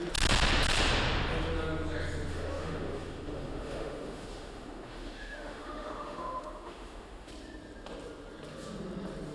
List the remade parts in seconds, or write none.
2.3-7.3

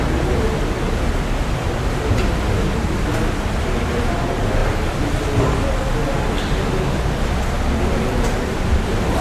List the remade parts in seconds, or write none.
none

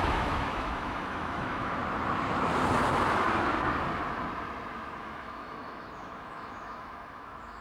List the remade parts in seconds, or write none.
0.0-1.8; 5.0-7.6

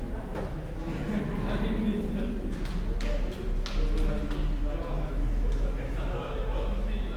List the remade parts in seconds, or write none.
0.0-1.0; 4.9-7.2